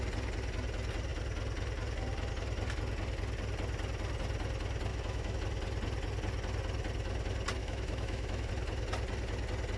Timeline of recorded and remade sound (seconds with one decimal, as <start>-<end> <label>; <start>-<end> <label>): 0.0-4.9 recorded; 4.9-5.4 remade; 5.4-7.6 recorded; 7.6-8.5 remade; 8.5-9.8 recorded